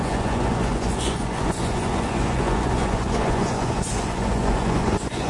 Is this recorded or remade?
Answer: remade